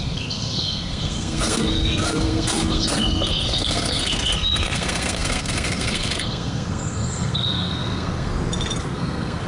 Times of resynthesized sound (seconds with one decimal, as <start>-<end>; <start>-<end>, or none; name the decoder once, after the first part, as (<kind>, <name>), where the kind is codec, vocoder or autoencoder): 0.0-8.3 (codec, SNAC); 8.8-9.5

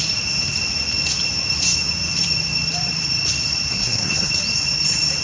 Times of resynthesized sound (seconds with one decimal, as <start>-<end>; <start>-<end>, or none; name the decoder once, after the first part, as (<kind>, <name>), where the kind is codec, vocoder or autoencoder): 3.7-4.3 (codec, SNAC)